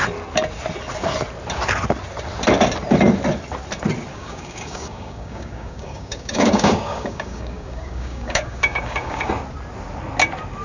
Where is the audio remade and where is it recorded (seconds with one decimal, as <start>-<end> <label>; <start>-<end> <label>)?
0.0-4.1 recorded; 4.1-9.3 remade; 9.3-10.6 recorded